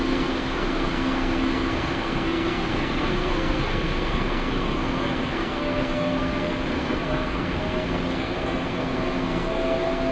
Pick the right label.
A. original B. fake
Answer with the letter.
B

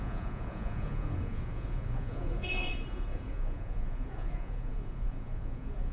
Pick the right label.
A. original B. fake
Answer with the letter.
B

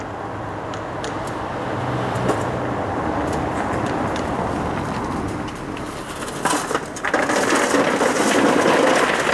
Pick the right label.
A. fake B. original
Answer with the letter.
B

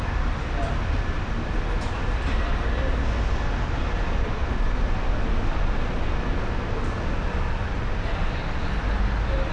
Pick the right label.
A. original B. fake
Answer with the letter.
A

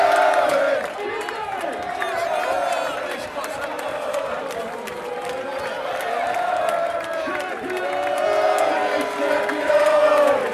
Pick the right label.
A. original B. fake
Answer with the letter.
A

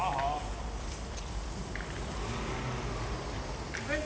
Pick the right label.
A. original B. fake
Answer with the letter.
A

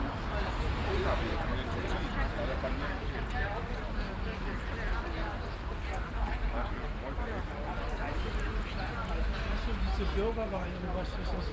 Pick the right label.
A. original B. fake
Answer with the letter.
A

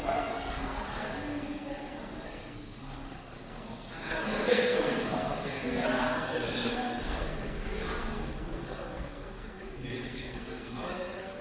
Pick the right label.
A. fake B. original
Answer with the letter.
A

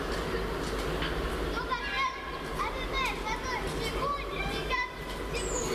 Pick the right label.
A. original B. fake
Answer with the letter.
A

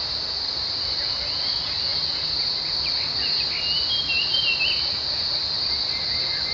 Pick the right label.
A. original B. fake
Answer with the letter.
A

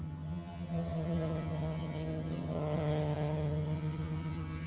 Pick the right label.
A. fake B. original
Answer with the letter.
A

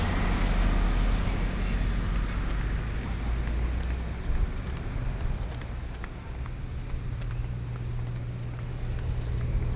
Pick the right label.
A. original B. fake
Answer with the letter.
A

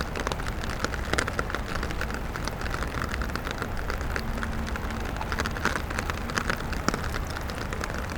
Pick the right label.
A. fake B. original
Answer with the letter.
B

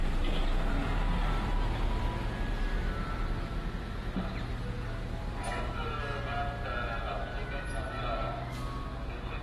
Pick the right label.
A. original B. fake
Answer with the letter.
A